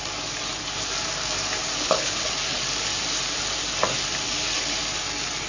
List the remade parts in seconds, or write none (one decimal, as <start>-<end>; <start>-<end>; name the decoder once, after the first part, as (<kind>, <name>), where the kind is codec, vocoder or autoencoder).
1.8-2.3 (codec, HILCodec)